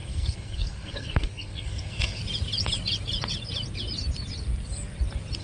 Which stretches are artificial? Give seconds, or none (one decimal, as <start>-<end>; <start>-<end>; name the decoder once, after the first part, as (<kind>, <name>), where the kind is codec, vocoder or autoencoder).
0.0-2.2 (codec, SNAC)